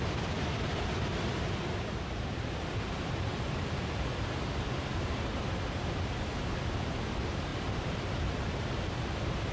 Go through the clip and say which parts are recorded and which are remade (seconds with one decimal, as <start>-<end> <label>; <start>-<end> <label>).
0.0-2.3 recorded; 2.3-4.9 remade; 4.9-7.5 recorded; 7.5-8.2 remade; 8.2-9.5 recorded